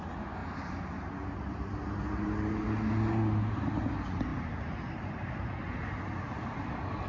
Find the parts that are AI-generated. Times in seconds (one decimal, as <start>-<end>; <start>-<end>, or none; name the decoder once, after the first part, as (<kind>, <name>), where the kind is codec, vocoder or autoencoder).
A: none

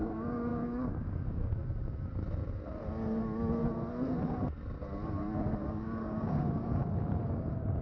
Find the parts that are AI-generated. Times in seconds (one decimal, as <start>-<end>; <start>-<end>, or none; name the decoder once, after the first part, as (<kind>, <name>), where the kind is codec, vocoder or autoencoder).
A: 0.0-1.6 (codec, DAC); 5.7-6.8; 7.3-7.8

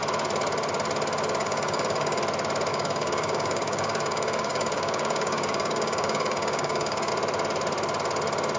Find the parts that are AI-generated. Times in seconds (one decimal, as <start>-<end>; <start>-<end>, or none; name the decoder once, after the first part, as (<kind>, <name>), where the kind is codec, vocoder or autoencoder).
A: 1.4-2.2 (codec, DAC); 2.7-7.1

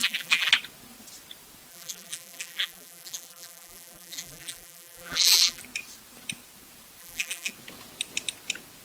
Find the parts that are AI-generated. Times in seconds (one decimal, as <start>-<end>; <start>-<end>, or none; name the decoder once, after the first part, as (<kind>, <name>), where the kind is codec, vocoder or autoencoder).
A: 0.0-0.5 (vocoder, BigVGAN v2); 1.7-5.6; 7.0-7.5

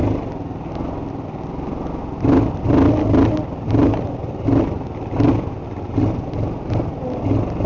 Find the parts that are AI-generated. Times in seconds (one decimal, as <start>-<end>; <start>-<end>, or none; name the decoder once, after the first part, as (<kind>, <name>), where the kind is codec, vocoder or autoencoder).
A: none

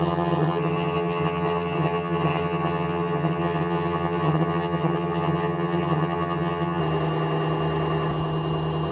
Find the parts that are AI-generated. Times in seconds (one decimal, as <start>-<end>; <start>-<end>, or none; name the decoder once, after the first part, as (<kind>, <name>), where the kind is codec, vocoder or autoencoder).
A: 0.0-6.8 (vocoder, HiFi-GAN)